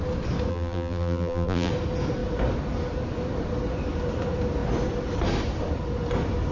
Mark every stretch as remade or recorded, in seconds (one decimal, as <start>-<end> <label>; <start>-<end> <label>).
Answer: 0.0-0.5 recorded; 0.5-1.7 remade; 1.7-6.5 recorded